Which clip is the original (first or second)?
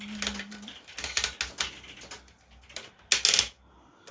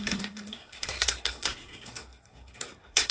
first